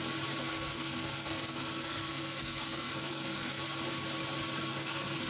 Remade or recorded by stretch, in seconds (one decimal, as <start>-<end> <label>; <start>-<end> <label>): 0.0-0.4 recorded; 0.4-3.6 remade; 3.6-4.7 recorded; 4.7-5.3 remade